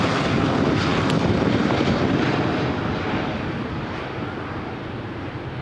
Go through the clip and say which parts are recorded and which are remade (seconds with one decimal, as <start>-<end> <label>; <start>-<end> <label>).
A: 0.0-0.9 recorded; 0.9-4.3 remade; 4.3-5.6 recorded

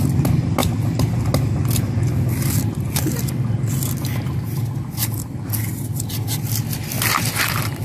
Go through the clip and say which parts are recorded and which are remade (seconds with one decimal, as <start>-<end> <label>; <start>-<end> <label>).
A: 0.0-7.8 recorded

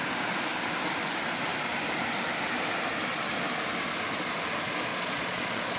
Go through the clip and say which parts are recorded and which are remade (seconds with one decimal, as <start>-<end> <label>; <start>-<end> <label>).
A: 0.0-4.9 recorded; 4.9-5.8 remade

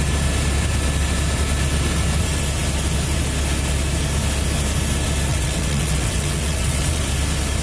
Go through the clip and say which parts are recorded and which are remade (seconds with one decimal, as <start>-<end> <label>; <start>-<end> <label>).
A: 0.0-5.3 recorded; 5.3-7.0 remade; 7.0-7.6 recorded

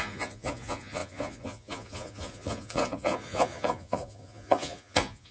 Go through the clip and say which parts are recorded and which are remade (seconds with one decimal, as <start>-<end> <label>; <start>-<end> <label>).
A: 0.0-5.3 remade